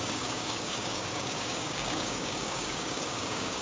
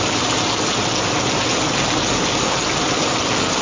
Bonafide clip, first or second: second